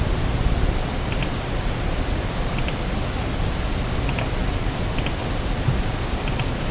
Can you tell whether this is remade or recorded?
recorded